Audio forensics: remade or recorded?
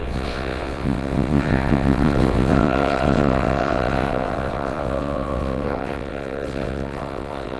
remade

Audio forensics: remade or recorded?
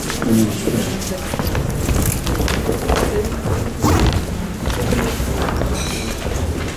recorded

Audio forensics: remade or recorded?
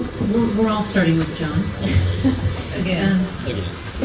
recorded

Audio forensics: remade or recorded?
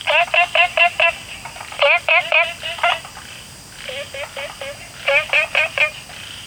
recorded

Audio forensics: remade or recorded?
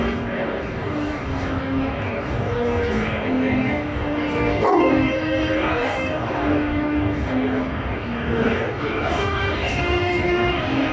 remade